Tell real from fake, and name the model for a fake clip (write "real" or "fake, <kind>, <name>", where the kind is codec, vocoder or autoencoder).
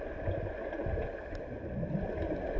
real